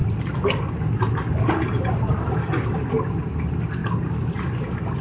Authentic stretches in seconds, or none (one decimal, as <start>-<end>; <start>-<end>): 0.0-5.0